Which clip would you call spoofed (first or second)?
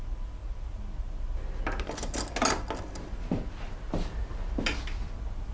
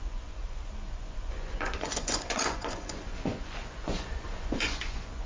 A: second